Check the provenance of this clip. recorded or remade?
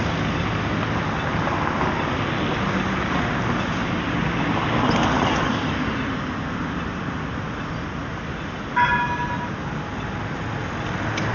recorded